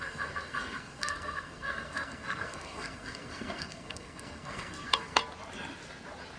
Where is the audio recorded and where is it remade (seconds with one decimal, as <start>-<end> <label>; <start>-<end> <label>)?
0.0-5.2 remade; 5.2-6.4 recorded